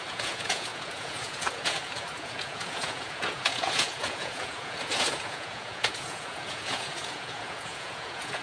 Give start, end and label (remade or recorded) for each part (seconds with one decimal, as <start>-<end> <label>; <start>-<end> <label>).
0.0-8.4 remade